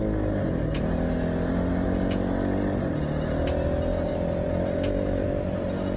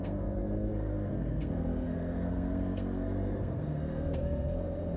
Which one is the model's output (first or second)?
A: second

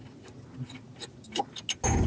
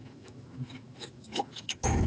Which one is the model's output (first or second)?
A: second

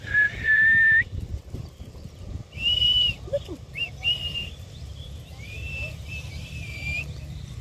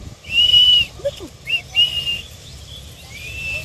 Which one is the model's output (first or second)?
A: first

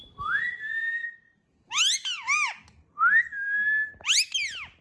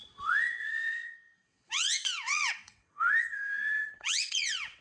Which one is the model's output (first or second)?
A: second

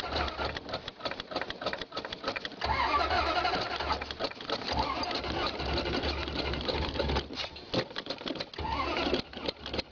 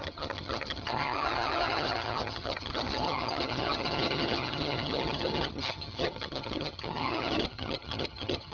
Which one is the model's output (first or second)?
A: second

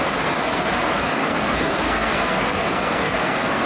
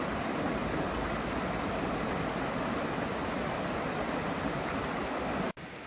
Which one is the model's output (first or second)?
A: first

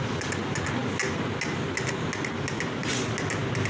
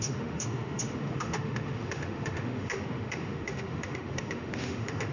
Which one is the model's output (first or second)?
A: second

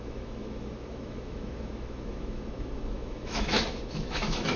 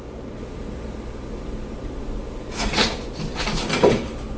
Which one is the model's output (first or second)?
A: first